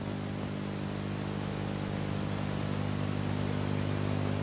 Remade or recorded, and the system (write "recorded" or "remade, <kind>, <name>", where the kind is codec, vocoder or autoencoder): recorded